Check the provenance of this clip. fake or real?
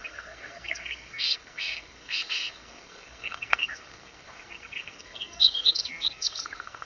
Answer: fake